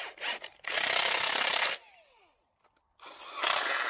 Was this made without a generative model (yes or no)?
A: yes